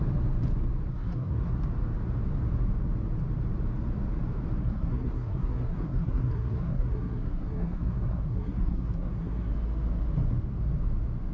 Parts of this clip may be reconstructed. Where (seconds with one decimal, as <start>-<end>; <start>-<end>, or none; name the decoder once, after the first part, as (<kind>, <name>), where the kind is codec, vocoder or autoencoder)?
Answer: 0.9-1.5 (codec, SNAC); 4.6-9.5